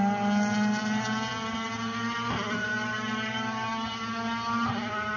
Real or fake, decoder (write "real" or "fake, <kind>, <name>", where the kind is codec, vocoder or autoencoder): real